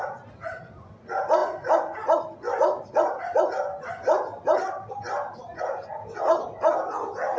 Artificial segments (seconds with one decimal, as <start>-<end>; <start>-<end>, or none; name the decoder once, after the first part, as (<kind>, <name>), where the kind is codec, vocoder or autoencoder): none

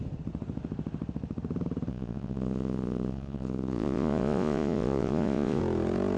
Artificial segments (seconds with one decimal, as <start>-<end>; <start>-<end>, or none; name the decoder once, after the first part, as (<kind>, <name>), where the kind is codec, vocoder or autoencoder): 1.9-5.6 (vocoder, Vocos)

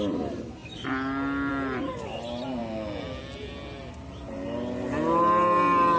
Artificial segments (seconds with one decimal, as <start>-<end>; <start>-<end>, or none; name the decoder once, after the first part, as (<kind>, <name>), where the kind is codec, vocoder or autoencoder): none

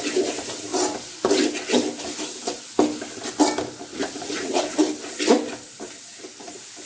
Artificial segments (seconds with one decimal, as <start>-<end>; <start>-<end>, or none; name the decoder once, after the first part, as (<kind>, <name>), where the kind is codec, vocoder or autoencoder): 3.9-4.6 (vocoder, Vocos)